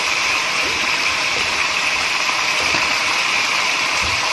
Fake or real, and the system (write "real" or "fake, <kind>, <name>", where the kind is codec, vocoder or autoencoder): fake, vocoder, BigVGAN v2